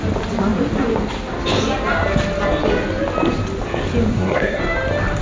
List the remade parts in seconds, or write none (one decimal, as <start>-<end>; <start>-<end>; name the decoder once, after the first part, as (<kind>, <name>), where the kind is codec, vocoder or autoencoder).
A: 4.1-4.6 (codec, SNAC)